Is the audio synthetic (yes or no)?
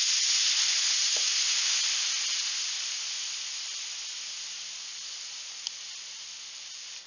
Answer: no